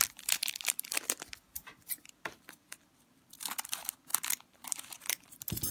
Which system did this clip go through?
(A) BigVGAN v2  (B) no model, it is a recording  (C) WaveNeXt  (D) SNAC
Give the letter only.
A